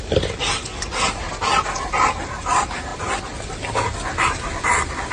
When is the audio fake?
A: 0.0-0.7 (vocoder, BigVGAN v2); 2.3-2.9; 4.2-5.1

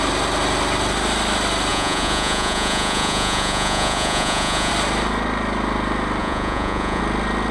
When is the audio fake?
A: 1.7-4.7 (vocoder, Vocos); 6.2-7.0

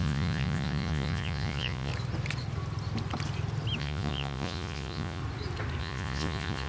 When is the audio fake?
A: 0.0-1.9 (vocoder, Vocos); 3.8-5.2; 5.8-6.7

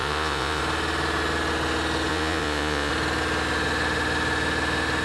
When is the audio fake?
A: 0.0-0.6 (vocoder, Vocos); 2.1-2.9

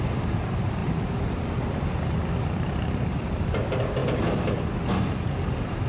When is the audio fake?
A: 0.0-0.8 (vocoder, BigVGAN v2); 2.4-4.0; 5.3-5.9